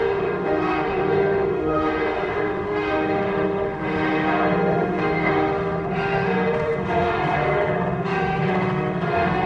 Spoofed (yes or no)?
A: yes